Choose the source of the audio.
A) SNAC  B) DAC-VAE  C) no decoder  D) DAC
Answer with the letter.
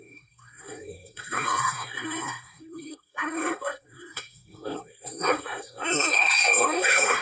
A